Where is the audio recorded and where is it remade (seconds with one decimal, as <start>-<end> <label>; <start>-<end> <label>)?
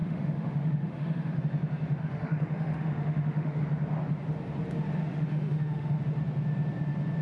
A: 0.0-1.4 remade; 1.4-2.0 recorded; 2.0-3.6 remade; 3.6-5.0 recorded; 5.0-6.0 remade; 6.0-7.2 recorded